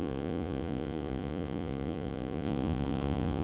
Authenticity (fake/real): fake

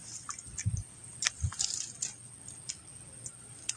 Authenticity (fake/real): real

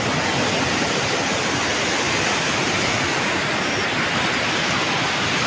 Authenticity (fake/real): real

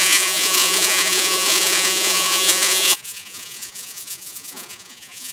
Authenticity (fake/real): fake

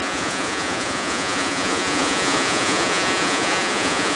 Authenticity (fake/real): fake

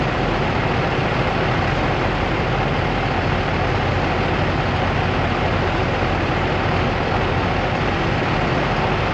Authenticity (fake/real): real